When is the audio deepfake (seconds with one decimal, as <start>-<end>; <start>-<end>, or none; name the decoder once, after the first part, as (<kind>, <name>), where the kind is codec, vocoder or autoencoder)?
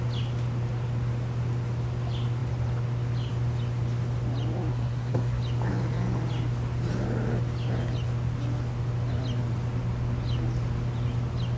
4.7-5.4 (codec, SNAC)